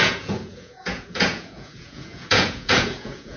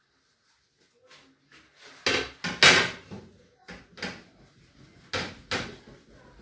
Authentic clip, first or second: second